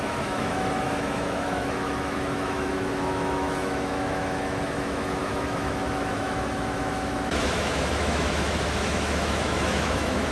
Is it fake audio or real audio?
fake